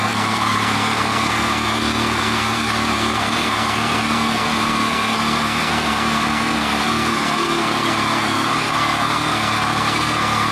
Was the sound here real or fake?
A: fake